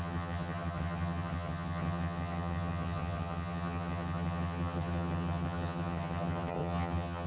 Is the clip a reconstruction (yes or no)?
yes